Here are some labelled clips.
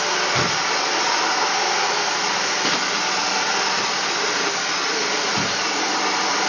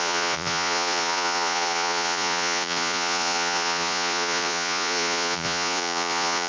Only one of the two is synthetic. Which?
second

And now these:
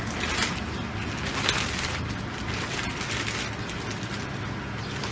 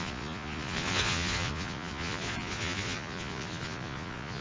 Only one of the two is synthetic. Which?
second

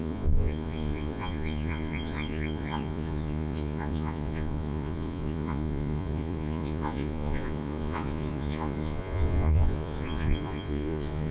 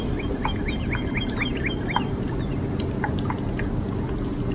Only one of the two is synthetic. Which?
first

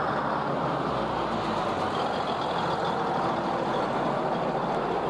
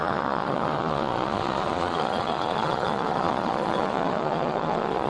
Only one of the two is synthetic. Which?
second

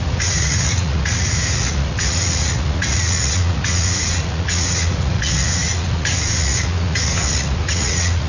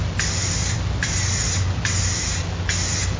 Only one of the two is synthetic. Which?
first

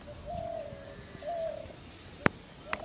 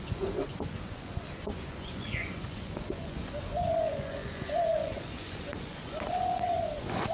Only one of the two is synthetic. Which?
second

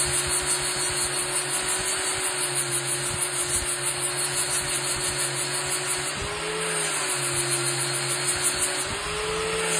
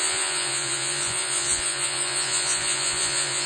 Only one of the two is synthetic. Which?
second